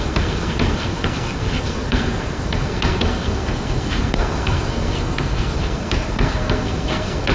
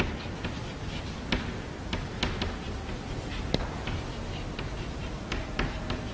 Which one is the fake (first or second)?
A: first